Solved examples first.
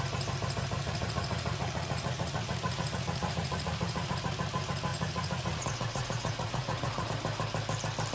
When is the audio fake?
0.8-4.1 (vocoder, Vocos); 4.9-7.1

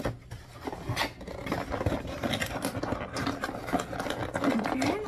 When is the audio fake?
none

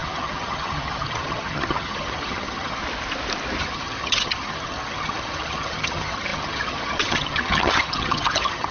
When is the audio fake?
0.0-2.8 (vocoder, HiFi-GAN); 3.6-8.7

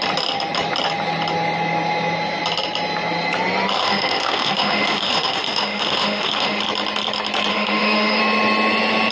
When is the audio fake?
3.8-6.6 (autoencoder, DAC-VAE); 7.5-8.2

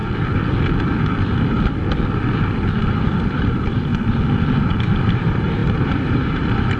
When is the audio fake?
2.9-3.9 (vocoder, BigVGAN v2); 5.0-6.8

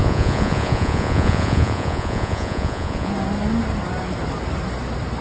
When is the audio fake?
0.0-3.1 (vocoder, Vocos)

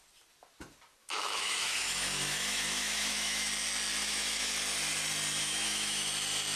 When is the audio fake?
1.0-3.5 (autoencoder, DAC-VAE); 4.0-4.5; 5.4-6.1